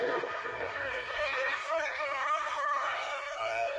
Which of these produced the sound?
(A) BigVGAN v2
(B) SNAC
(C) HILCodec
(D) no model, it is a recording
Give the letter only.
B